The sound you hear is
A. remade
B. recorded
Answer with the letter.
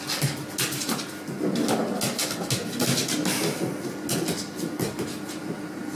B